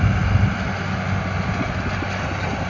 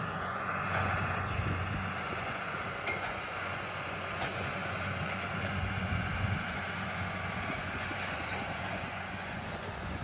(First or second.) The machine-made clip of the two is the second